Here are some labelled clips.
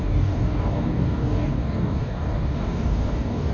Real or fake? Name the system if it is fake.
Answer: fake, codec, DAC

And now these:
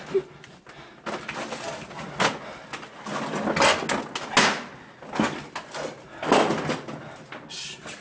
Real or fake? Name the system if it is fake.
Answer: real